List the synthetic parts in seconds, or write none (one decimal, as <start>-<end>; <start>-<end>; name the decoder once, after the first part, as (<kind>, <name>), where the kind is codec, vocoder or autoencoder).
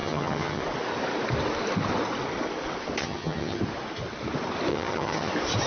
0.0-0.6 (vocoder, HiFi-GAN); 3.0-3.6; 4.7-5.3